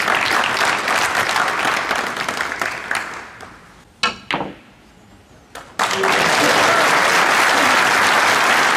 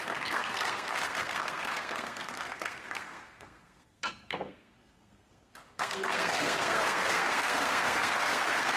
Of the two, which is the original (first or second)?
first